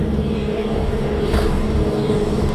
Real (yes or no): no